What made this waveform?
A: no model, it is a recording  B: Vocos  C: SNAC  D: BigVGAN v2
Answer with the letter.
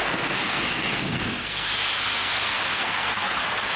C